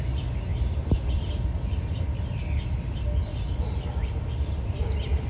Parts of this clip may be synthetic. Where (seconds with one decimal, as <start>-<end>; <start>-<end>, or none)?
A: 0.5-3.3